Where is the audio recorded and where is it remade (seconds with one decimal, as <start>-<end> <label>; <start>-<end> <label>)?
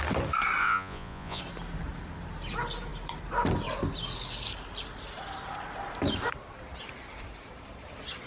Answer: 0.0-0.6 recorded; 0.6-1.4 remade; 1.4-8.3 recorded